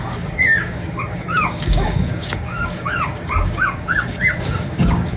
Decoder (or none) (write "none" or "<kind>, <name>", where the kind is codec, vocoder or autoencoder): codec, DAC